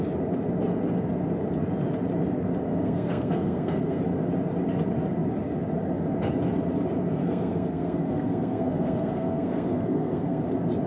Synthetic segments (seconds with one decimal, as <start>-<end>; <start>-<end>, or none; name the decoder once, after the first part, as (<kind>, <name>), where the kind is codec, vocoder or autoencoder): 2.7-4.0 (codec, SNAC); 7.2-10.4